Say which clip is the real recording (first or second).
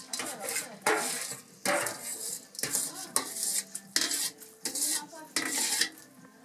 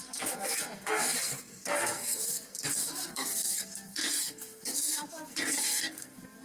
first